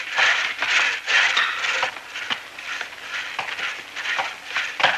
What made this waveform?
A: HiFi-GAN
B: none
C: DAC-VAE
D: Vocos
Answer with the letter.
B